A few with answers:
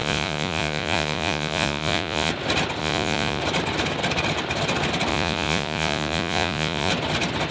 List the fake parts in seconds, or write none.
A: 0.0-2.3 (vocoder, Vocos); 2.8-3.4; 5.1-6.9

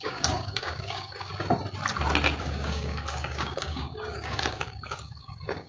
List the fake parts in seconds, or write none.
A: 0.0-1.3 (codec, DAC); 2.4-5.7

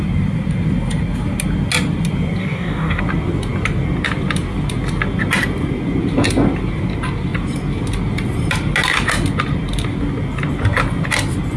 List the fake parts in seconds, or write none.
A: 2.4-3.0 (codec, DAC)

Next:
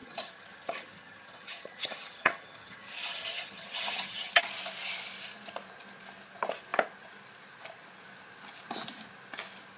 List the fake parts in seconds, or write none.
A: 0.0-4.4 (vocoder, HiFi-GAN)

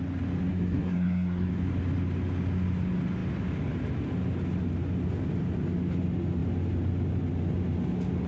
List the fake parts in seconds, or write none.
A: 0.5-1.5 (codec, SNAC)

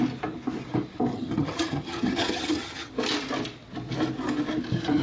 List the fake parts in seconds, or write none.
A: 1.1-2.9 (vocoder, HiFi-GAN)

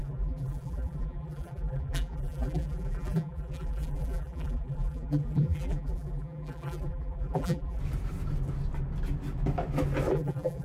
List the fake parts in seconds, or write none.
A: 0.0-7.8 (vocoder, BigVGAN v2); 10.1-10.6